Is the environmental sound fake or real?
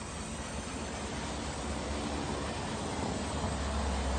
real